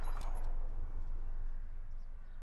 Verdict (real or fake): real